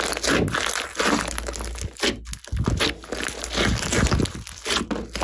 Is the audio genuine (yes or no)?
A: yes